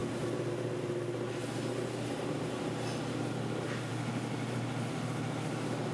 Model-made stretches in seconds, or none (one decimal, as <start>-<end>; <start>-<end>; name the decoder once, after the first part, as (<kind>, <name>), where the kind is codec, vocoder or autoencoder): none